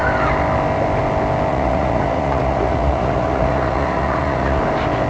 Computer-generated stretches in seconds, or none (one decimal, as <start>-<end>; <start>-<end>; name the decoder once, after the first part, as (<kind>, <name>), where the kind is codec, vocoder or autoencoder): 1.5-4.6 (vocoder, Vocos)